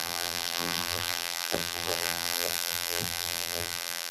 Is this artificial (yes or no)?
yes